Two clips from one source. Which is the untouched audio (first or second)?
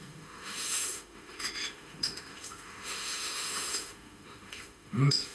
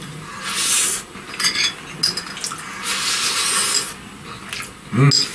second